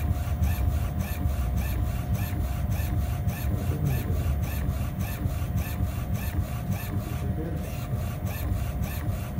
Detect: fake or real real